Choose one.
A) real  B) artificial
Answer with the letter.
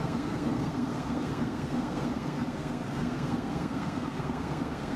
B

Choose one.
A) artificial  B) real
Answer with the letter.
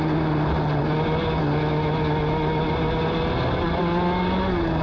B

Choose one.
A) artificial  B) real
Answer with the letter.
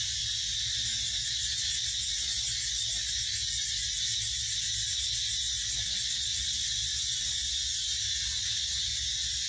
B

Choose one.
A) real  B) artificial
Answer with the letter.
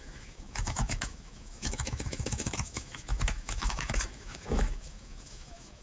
B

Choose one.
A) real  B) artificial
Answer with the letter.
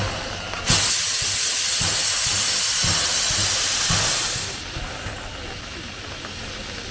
A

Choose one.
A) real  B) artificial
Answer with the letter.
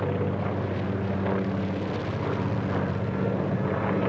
A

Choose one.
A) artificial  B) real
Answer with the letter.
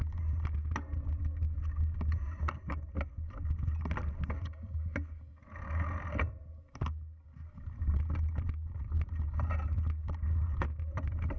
B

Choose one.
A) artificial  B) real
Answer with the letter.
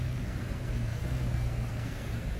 A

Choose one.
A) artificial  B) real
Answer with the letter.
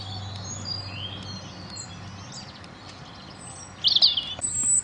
B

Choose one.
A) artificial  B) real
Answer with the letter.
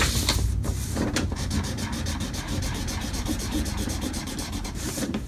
A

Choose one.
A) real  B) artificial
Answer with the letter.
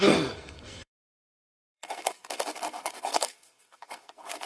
B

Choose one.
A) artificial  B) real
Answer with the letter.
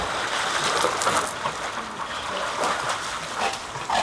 A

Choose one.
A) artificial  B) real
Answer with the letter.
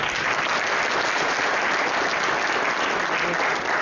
B